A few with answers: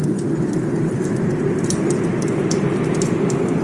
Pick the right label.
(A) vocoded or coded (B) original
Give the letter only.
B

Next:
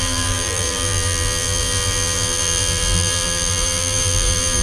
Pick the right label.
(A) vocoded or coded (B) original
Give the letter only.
A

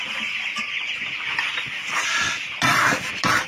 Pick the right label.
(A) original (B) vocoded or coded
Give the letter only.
A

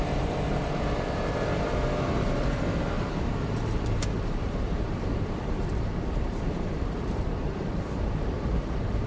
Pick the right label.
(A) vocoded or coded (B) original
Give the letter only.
A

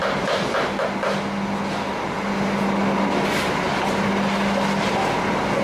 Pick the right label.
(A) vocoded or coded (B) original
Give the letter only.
B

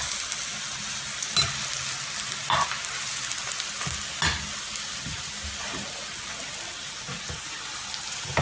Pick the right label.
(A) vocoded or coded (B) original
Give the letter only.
B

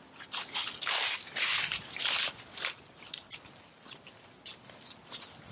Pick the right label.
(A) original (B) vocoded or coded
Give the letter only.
A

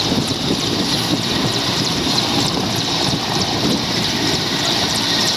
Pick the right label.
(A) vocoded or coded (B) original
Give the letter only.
A